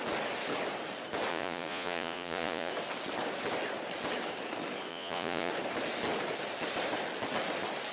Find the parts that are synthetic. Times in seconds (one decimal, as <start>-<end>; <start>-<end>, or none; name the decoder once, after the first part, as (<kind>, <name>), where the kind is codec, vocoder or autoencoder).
1.3-2.7 (vocoder, Vocos); 4.9-5.5